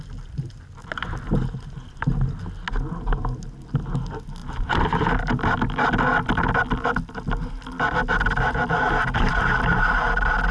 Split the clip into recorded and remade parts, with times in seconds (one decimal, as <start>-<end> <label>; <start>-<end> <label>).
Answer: 0.0-10.5 recorded